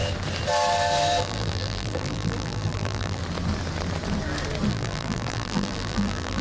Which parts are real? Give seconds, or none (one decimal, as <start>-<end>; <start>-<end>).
0.0-1.2; 3.2-4.7